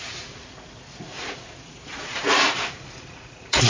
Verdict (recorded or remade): remade